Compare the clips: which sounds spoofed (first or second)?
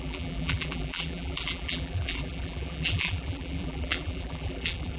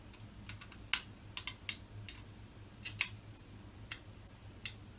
first